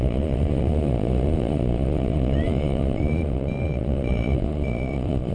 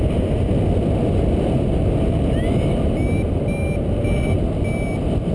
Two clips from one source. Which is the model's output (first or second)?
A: first